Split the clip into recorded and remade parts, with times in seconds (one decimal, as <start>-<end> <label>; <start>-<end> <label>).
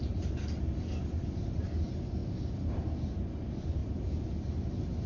0.0-5.1 recorded